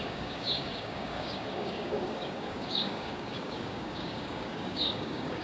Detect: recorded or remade remade